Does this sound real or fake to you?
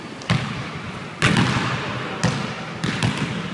real